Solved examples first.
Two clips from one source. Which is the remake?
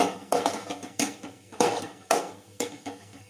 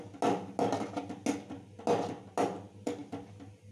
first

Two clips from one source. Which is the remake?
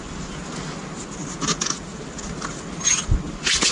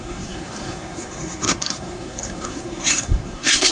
second